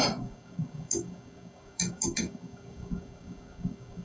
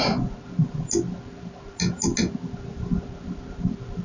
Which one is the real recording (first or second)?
second